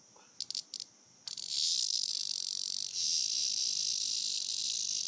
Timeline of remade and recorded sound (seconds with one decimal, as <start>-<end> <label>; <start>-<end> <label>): 0.0-5.1 recorded